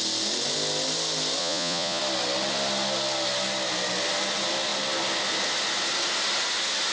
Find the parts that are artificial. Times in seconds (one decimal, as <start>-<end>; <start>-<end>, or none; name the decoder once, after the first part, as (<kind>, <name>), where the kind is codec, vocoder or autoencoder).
1.4-2.0 (vocoder, Vocos)